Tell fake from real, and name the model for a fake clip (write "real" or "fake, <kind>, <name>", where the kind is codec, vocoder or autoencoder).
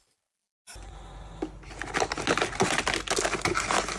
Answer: real